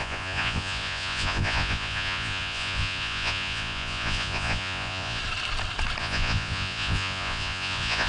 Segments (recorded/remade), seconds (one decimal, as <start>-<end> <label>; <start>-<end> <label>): 0.0-5.2 remade; 5.2-6.0 recorded; 6.0-8.1 remade